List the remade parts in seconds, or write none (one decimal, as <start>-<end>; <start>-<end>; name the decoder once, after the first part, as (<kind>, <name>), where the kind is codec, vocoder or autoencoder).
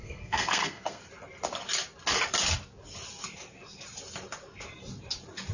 0.0-1.0 (codec, SNAC)